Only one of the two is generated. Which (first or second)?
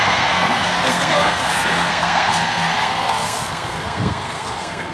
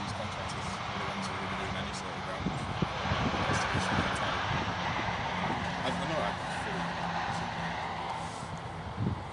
first